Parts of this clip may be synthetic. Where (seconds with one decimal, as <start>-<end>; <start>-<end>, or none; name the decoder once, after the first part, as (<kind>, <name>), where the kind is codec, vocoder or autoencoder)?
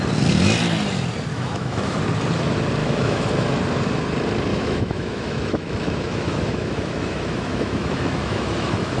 1.3-2.0 (autoencoder, DAC-VAE); 2.8-3.3; 4.5-9.0